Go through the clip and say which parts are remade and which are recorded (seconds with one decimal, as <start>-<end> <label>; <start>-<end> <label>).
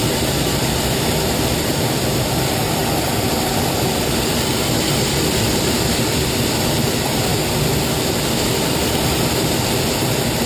0.0-7.3 remade; 7.3-8.4 recorded; 8.4-10.5 remade